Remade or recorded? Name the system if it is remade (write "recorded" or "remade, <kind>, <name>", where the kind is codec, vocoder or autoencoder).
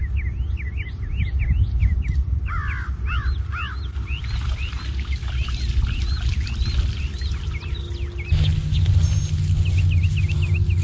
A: recorded